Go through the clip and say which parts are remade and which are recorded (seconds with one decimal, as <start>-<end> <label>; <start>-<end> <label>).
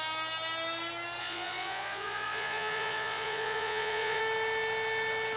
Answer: 0.0-1.2 recorded; 1.2-4.2 remade; 4.2-5.4 recorded